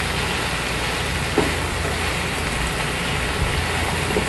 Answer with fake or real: real